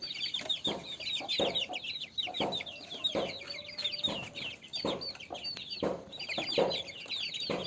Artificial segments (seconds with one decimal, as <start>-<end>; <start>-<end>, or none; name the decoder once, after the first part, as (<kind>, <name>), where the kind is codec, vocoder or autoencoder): none